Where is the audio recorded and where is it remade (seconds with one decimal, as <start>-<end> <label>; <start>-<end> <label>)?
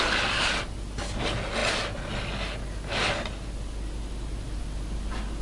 0.0-5.4 recorded